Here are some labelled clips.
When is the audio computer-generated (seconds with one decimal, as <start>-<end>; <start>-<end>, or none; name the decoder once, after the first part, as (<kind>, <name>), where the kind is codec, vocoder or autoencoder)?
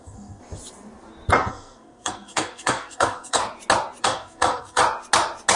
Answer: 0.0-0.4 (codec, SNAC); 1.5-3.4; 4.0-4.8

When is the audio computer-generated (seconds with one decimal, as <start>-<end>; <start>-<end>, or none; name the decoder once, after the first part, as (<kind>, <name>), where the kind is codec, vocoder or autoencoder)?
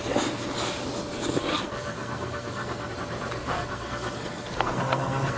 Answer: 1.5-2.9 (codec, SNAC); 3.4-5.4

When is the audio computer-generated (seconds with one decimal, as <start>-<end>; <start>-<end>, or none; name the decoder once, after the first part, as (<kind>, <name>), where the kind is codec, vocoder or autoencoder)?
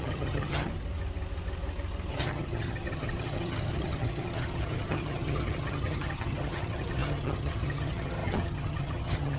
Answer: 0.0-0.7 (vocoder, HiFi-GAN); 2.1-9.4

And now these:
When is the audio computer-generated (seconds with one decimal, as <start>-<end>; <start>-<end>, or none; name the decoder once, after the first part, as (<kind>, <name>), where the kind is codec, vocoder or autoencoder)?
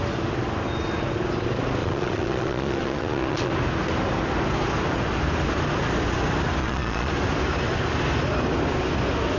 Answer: 1.8-3.5 (vocoder, Vocos); 6.6-7.1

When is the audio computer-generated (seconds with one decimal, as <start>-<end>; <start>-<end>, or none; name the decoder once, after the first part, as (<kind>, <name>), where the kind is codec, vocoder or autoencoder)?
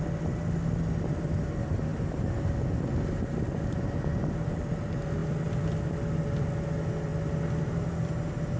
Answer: none